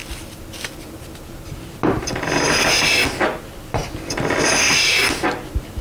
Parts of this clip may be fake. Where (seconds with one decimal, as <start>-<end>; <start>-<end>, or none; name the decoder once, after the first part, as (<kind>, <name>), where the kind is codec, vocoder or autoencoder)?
none